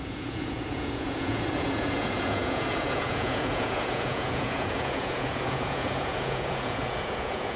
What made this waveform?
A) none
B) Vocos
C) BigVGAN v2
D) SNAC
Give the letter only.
B